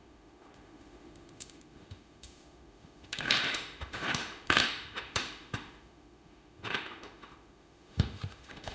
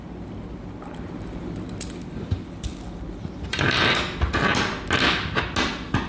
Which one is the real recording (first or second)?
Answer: second